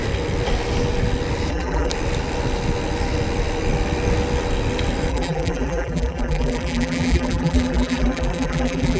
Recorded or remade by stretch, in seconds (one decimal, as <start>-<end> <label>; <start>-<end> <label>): 0.0-1.5 recorded; 1.5-1.9 remade; 1.9-5.1 recorded; 5.1-9.0 remade